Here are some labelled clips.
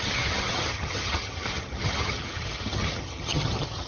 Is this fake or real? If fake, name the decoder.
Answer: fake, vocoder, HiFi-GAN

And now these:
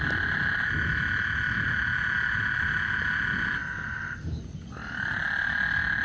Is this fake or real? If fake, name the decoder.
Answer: real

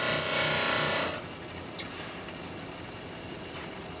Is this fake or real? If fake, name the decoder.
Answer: real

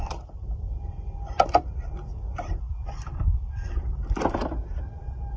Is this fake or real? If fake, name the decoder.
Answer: fake, vocoder, BigVGAN v2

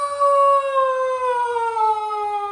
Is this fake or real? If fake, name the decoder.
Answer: real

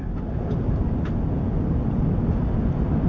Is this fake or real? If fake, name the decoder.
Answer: real